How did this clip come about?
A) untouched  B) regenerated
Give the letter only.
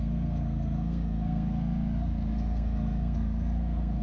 B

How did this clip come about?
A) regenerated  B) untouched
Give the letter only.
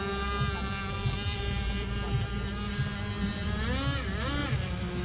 B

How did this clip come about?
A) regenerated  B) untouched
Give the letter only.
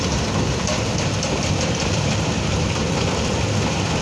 B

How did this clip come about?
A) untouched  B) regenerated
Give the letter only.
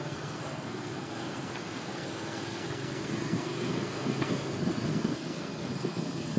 B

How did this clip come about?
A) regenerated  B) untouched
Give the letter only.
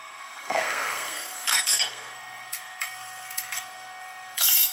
A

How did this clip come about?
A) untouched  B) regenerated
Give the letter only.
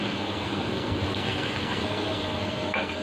B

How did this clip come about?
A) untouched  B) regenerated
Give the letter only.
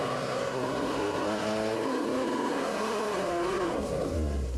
B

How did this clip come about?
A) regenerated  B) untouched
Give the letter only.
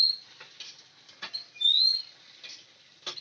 B